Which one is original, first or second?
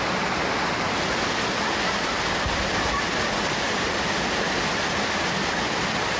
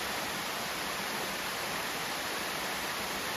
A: first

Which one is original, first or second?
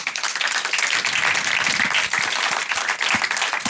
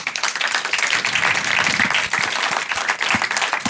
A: first